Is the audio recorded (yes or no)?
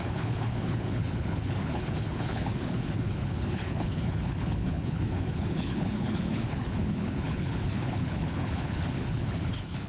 no